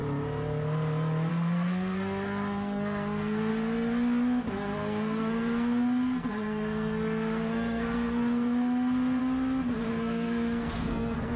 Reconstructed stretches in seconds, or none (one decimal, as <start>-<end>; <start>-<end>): 1.3-3.5; 4.5-9.2; 9.9-11.4